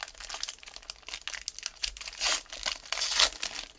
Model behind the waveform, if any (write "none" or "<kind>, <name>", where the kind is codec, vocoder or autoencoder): none